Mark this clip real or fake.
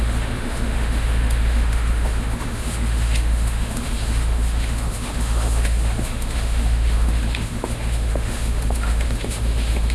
fake